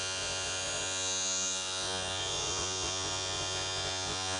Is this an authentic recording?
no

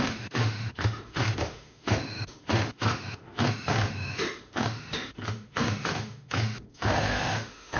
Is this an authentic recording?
no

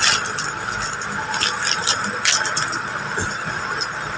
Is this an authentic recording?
yes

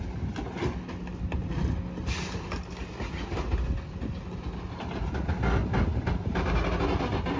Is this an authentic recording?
yes